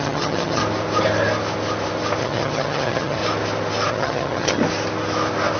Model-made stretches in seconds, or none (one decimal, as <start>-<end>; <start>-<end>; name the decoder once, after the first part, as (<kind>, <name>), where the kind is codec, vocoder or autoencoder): 0.0-0.6 (vocoder, HiFi-GAN); 2.2-3.2; 3.9-4.6